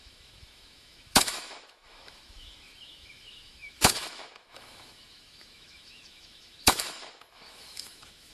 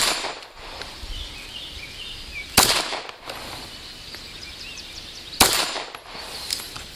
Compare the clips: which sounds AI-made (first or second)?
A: first